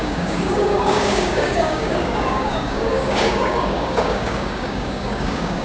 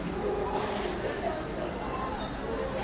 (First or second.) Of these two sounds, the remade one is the first